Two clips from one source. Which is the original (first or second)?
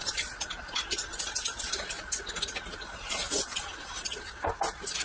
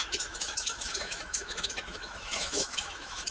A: first